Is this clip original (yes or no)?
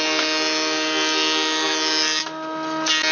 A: yes